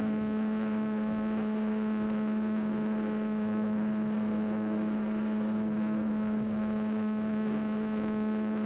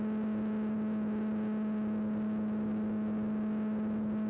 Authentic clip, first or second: second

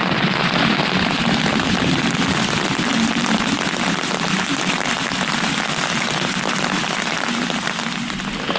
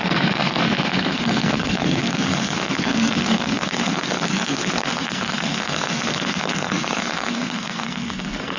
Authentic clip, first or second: first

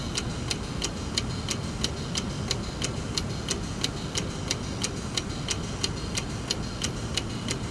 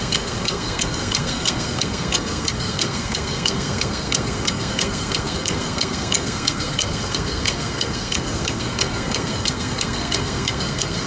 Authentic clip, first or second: first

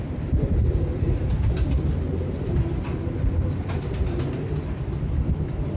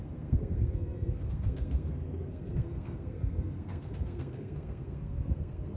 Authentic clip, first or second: first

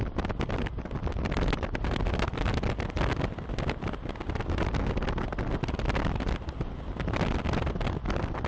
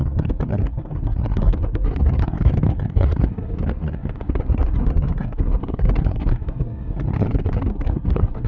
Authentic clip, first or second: first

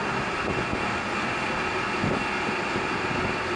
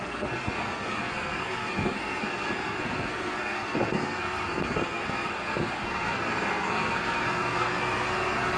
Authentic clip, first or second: first